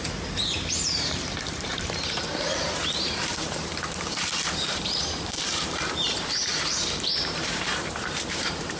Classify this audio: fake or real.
fake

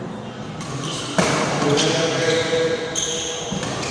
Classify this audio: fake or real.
real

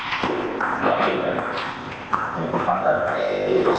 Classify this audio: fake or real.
fake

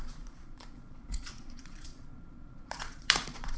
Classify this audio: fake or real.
fake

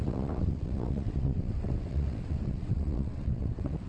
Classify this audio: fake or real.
fake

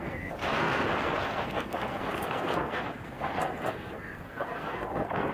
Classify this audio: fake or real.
fake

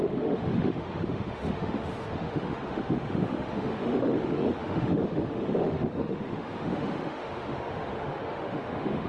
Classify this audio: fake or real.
fake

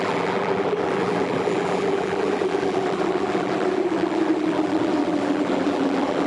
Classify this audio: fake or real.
fake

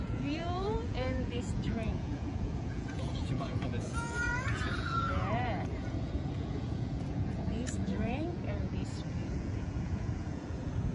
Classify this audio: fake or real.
fake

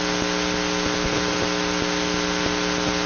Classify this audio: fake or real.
real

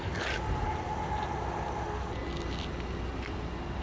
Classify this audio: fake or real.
real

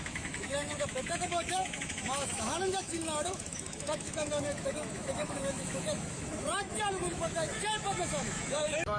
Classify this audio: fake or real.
fake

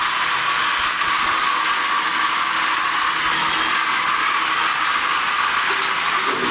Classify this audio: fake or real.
real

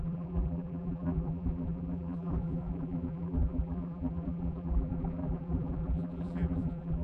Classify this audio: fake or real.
fake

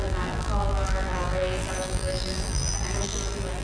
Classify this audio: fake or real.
fake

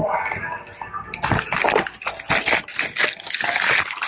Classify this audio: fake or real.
real